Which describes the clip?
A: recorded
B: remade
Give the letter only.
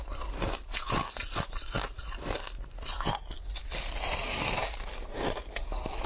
A